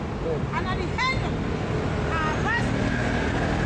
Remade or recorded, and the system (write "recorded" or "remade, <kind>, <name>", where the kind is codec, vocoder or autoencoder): recorded